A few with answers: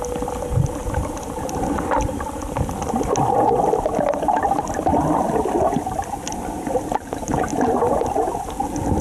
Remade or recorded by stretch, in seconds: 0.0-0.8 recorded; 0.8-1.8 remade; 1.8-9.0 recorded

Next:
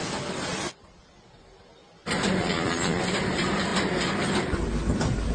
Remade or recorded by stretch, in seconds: 0.0-2.4 recorded; 2.4-3.0 remade; 3.0-5.3 recorded

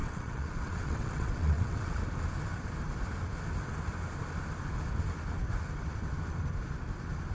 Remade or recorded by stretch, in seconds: 0.0-2.0 remade; 2.0-7.3 recorded